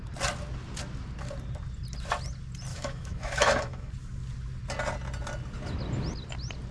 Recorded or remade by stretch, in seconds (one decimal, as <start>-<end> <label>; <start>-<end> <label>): 0.0-2.7 recorded; 2.7-3.9 remade; 3.9-6.7 recorded